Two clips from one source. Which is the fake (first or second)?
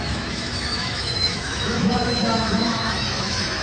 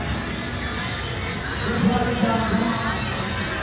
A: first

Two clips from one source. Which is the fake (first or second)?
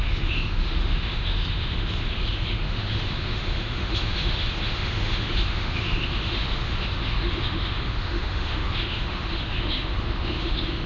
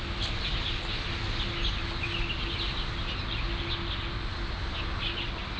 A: first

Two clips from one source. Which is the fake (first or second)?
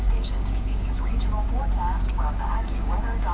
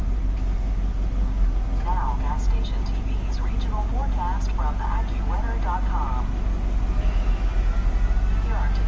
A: first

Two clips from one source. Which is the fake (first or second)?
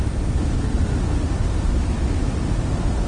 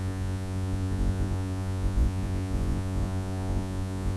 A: second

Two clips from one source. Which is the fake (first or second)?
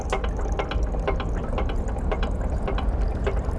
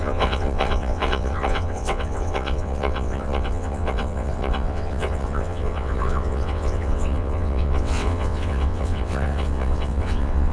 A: second